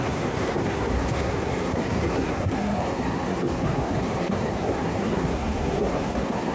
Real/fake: fake